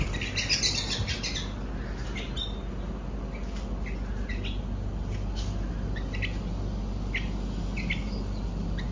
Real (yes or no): yes